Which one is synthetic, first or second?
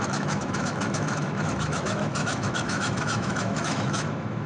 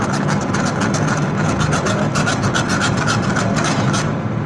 first